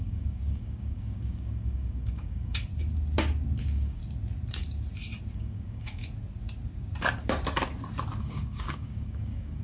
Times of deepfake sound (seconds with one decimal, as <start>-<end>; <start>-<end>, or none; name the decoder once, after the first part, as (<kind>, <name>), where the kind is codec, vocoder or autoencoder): 0.0-2.7 (codec, DAC); 3.6-4.0; 5.3-6.0; 8.2-9.6

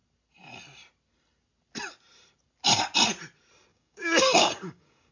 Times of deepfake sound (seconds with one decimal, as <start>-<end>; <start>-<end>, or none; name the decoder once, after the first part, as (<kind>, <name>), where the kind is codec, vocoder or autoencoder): 3.7-5.1 (codec, DAC)

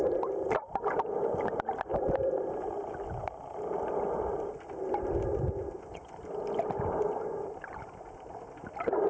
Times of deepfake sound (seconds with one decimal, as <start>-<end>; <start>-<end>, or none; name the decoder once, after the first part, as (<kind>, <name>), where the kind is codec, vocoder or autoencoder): none

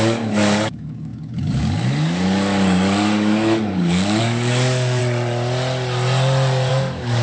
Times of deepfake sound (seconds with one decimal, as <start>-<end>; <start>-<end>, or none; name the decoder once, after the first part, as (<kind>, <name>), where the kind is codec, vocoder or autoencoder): 0.0-5.0 (codec, DAC); 6.7-7.2

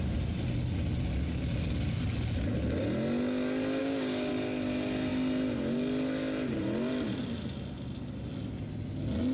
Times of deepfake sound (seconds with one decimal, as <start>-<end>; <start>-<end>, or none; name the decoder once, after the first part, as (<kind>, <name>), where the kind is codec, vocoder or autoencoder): 3.8-4.3 (codec, DAC)

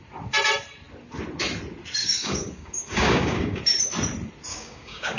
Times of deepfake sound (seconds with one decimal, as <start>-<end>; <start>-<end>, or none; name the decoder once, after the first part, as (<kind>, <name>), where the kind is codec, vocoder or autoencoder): 2.0-3.6 (codec, DAC); 4.5-5.2